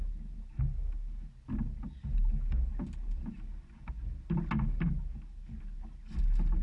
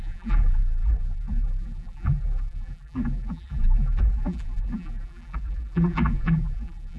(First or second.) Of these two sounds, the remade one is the second